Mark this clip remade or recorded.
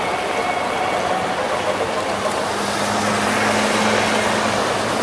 recorded